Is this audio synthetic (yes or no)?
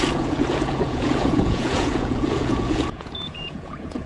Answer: yes